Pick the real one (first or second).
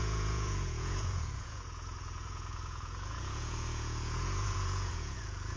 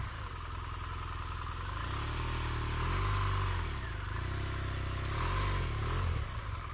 second